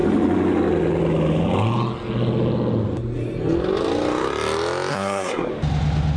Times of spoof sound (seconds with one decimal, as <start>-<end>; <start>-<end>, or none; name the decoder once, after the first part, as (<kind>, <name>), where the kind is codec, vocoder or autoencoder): 4.9-5.5 (codec, SNAC)